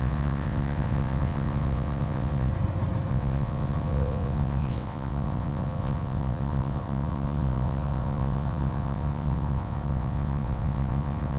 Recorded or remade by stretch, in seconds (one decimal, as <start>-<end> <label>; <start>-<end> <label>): 0.0-2.5 remade; 2.5-3.1 recorded; 3.1-11.4 remade